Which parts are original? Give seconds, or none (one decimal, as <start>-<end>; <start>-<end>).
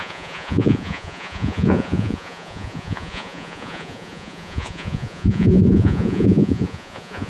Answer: none